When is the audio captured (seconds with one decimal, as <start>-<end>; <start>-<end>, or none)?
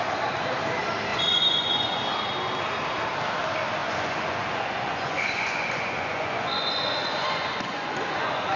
0.0-1.1; 2.1-3.8